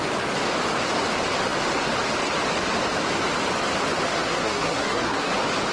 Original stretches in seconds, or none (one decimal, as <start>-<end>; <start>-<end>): 0.0-4.1; 5.3-5.7